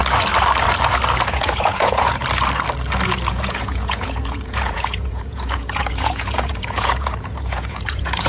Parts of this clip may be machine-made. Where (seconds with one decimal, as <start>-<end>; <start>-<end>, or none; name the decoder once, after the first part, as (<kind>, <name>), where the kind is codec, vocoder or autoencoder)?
1.3-2.2 (vocoder, Vocos); 3.3-8.3